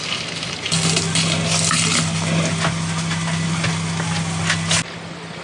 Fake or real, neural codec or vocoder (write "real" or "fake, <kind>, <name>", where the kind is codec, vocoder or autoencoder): real